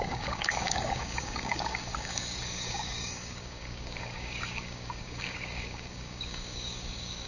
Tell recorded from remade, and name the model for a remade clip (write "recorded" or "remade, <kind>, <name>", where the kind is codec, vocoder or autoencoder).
remade, codec, DAC